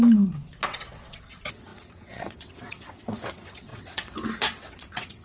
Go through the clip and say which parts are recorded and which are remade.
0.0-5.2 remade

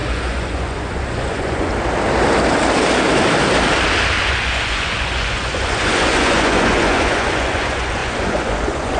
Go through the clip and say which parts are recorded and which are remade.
0.0-1.7 remade; 1.7-4.2 recorded; 4.2-9.0 remade

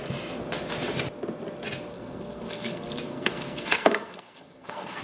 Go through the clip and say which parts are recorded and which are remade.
0.0-1.9 recorded; 1.9-5.0 remade

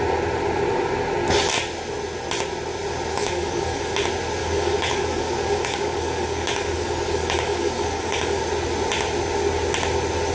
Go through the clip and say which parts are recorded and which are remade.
0.0-3.1 recorded; 3.1-3.9 remade; 3.9-4.4 recorded; 4.4-8.4 remade; 8.4-10.3 recorded